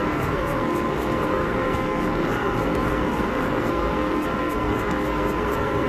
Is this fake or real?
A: fake